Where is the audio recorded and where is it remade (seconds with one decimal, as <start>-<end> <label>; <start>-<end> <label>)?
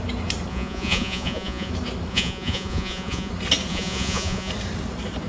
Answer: 0.0-0.5 recorded; 0.5-1.7 remade; 1.7-2.1 recorded; 2.1-3.3 remade; 3.3-3.7 recorded; 3.7-4.5 remade; 4.5-5.3 recorded